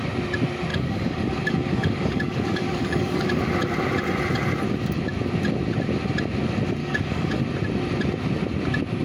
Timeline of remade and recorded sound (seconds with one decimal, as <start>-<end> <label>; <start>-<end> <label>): 0.0-0.7 recorded; 0.7-3.4 remade; 3.4-6.8 recorded; 6.8-7.4 remade; 7.4-9.0 recorded